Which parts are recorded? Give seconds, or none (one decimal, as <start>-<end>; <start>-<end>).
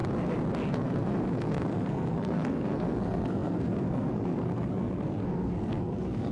0.0-0.7